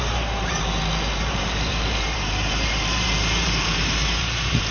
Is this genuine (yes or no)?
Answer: no